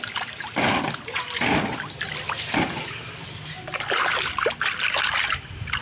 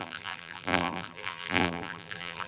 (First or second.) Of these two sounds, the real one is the first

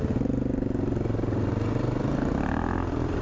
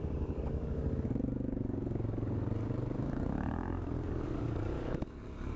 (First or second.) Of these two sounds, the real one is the first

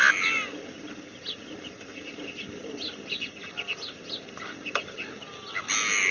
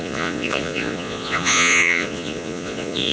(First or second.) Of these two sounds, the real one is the first